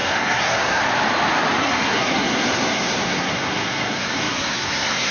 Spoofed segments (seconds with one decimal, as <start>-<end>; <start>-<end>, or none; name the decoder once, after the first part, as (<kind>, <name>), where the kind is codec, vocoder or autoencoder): 0.0-0.8 (codec, SNAC); 1.6-5.1